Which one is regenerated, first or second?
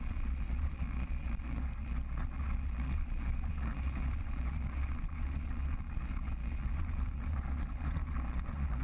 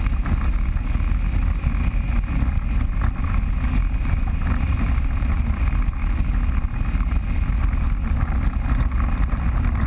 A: first